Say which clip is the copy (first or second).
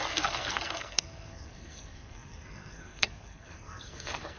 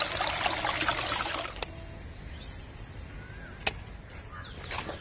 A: first